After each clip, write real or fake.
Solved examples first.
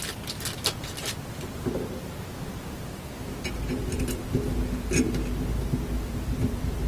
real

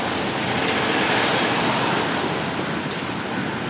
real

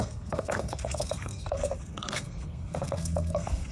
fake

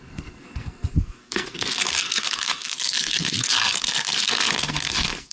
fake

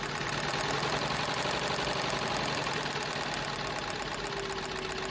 real